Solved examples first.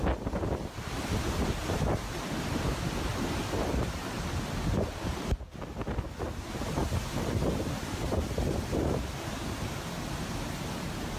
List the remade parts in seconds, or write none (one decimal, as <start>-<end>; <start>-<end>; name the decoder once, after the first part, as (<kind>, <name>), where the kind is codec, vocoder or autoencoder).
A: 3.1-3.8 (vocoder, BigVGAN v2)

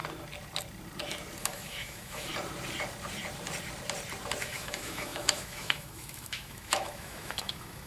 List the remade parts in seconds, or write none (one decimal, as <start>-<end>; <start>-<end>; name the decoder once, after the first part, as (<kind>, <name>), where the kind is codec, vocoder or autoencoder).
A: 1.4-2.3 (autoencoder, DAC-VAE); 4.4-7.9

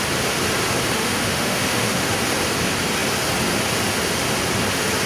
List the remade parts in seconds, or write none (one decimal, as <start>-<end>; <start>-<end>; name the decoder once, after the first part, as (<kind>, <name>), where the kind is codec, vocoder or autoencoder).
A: 1.0-2.1 (autoencoder, DAC-VAE)

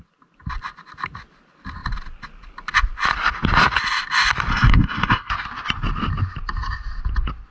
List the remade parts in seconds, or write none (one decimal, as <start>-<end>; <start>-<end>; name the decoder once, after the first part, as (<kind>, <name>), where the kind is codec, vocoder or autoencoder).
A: 4.5-5.3 (codec, SNAC)

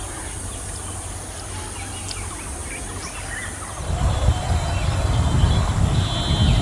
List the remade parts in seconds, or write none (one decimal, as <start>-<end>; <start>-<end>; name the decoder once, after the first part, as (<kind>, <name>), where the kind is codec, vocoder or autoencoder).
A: none